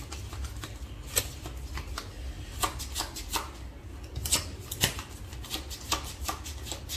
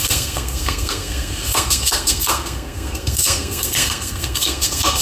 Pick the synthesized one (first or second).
second